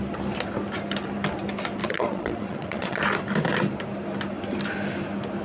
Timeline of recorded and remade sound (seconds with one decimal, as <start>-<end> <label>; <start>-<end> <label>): 0.0-1.8 recorded; 1.8-3.0 remade; 3.0-5.4 recorded